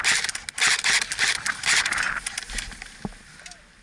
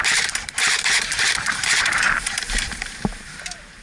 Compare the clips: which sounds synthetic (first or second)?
second